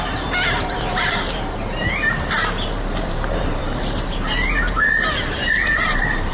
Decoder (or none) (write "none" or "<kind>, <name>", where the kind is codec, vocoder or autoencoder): vocoder, BigVGAN v2